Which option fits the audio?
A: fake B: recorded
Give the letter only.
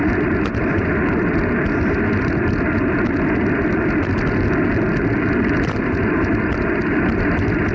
A